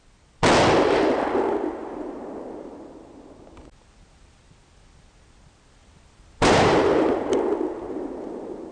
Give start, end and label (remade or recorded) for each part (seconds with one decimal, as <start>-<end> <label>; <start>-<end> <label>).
0.0-1.8 recorded; 1.8-2.4 remade; 2.4-5.8 recorded; 5.8-7.3 remade; 7.3-8.7 recorded